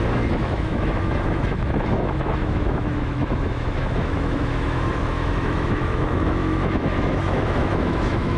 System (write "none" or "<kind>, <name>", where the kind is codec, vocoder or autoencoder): autoencoder, DAC-VAE